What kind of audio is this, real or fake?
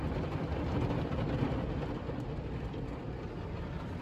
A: real